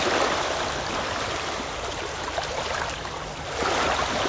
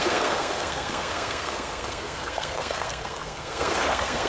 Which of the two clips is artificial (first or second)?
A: second